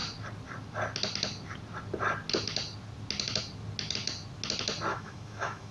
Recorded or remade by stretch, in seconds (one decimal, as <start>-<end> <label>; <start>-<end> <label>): 0.0-4.9 recorded; 4.9-5.7 remade